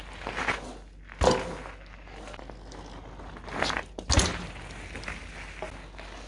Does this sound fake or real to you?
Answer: real